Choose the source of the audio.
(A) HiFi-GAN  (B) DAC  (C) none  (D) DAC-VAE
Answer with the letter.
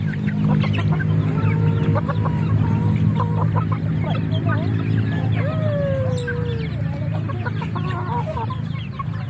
C